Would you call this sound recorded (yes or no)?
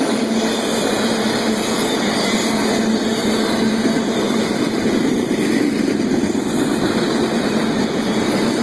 yes